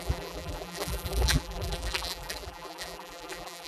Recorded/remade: remade